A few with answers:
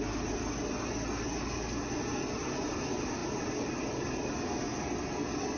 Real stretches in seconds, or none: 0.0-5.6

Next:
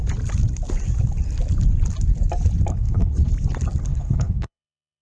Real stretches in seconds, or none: 0.0-2.7; 3.3-3.9

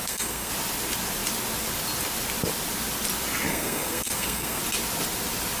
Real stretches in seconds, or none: 0.5-3.5; 4.6-5.6

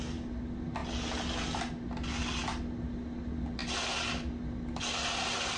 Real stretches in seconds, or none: 0.0-5.6